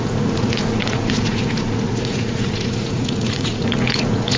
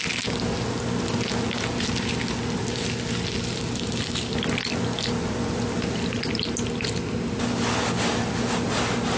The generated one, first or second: first